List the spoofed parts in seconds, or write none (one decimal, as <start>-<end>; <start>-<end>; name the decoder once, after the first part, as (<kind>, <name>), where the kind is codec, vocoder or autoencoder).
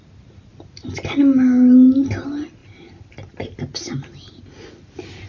none